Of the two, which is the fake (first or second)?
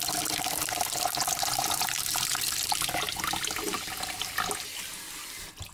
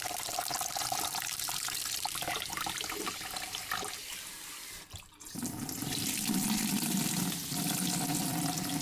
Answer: second